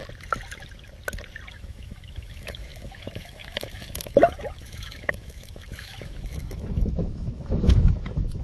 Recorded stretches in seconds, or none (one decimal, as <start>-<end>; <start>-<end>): 0.0-1.5